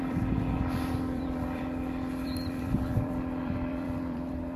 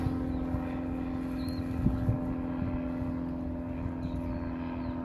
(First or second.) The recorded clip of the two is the second